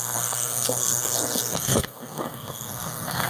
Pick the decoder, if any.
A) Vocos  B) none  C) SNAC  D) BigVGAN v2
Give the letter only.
C